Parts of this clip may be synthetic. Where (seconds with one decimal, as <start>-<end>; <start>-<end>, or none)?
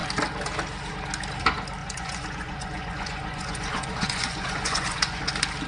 1.8-5.2